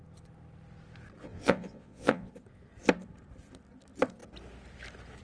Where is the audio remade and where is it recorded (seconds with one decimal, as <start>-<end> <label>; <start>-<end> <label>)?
0.0-1.2 recorded; 1.2-2.3 remade; 2.3-5.2 recorded